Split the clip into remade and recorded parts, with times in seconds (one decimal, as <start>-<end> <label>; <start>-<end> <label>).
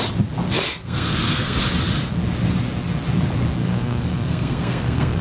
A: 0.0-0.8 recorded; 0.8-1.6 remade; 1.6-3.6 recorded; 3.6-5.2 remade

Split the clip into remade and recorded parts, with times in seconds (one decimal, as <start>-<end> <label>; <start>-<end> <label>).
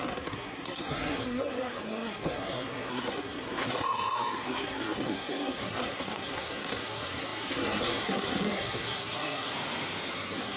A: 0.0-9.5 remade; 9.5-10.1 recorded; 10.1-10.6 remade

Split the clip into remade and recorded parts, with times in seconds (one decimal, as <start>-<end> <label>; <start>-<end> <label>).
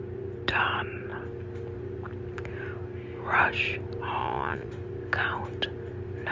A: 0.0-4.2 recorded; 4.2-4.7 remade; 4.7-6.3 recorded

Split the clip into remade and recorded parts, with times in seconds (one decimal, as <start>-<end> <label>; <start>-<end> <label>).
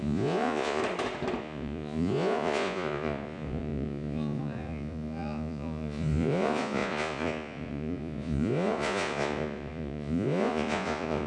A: 0.0-0.8 remade; 0.8-1.4 recorded; 1.4-11.3 remade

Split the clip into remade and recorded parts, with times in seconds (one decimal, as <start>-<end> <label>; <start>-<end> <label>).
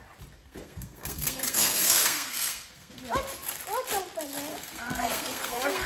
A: 0.0-0.4 recorded; 0.4-3.0 remade; 3.0-4.5 recorded; 4.5-5.9 remade